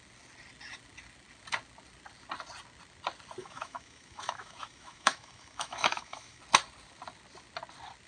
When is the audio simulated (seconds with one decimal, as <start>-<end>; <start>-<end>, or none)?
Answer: 3.4-6.4